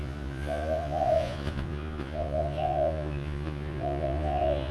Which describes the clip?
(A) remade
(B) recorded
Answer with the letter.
A